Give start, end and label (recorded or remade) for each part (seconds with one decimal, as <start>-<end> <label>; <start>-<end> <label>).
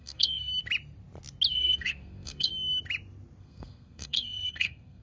0.0-0.5 remade; 0.5-1.5 recorded; 1.5-2.5 remade; 2.5-3.4 recorded; 3.4-5.0 remade